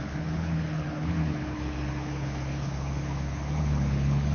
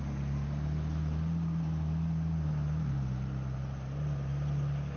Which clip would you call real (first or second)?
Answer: second